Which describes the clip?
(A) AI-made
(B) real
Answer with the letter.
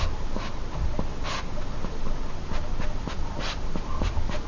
B